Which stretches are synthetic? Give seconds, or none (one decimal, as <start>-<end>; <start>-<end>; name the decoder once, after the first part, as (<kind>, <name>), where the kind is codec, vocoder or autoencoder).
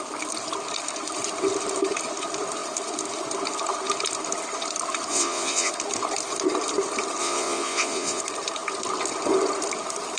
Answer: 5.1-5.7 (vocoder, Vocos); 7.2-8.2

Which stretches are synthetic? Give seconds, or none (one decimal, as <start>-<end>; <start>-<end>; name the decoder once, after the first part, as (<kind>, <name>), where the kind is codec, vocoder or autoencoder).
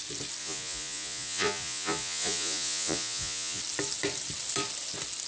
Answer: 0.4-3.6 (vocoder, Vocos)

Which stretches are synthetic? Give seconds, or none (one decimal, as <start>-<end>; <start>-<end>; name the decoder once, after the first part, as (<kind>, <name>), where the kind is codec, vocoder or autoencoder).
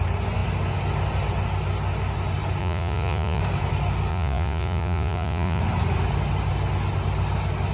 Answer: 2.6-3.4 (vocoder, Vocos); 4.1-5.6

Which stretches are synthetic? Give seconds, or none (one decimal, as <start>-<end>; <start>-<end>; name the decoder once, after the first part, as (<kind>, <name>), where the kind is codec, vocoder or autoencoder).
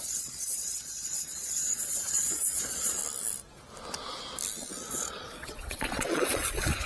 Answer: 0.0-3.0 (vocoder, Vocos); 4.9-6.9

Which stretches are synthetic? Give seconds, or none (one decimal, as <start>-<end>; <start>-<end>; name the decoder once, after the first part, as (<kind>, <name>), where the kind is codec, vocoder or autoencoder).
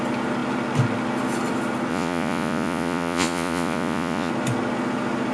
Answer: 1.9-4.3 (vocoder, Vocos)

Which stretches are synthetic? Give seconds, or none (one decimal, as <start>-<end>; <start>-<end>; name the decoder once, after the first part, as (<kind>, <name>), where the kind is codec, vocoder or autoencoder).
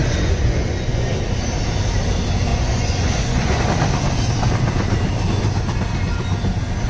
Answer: 0.0-1.1 (vocoder, Vocos); 2.5-3.6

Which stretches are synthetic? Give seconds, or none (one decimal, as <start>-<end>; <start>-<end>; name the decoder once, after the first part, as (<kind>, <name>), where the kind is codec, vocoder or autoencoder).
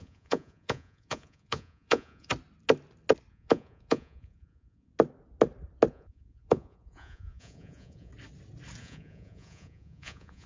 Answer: 0.0-2.3 (vocoder, Vocos); 3.3-4.9; 5.9-8.1; 8.8-10.5